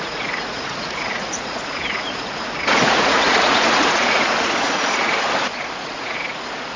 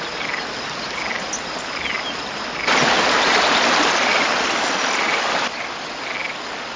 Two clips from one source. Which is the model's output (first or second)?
first